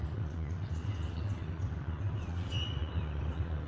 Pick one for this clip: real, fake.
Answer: fake